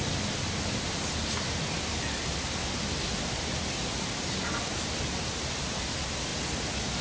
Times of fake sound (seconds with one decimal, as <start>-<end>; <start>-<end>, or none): none